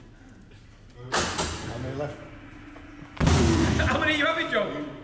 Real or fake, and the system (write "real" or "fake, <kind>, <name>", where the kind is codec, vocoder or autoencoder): real